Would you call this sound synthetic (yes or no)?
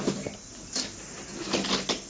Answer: no